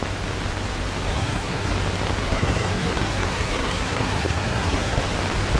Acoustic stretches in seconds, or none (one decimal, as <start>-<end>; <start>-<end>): 0.0-1.1; 1.7-2.2; 5.0-5.6